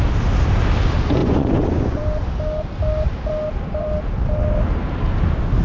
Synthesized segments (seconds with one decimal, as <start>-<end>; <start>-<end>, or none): 1.2-2.0